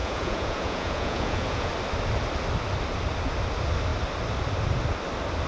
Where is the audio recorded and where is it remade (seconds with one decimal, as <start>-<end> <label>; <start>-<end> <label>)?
0.0-1.7 remade; 1.7-5.5 recorded